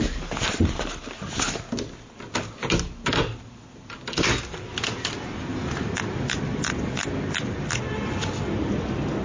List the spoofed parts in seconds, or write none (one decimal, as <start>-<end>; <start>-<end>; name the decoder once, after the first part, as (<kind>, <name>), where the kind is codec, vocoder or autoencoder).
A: none